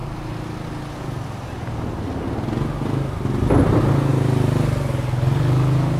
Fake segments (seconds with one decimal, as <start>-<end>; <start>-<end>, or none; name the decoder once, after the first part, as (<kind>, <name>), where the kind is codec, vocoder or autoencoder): none